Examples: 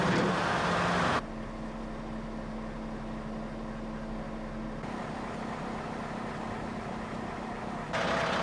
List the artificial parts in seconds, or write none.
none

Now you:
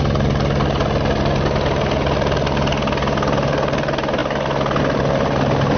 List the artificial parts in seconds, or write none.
none

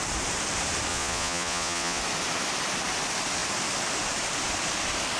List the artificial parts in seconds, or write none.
0.9-2.0 (vocoder, Vocos)